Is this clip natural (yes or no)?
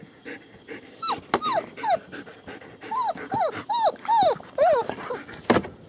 yes